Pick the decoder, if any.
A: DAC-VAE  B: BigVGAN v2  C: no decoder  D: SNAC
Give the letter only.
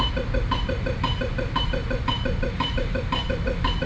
C